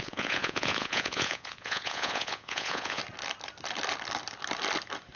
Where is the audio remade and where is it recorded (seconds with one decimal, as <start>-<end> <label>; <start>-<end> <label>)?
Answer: 0.0-3.0 remade; 3.0-5.2 recorded